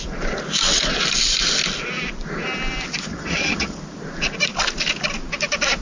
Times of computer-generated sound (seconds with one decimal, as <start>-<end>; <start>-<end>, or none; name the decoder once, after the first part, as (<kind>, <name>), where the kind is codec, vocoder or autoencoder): 3.1-3.8 (vocoder, HiFi-GAN)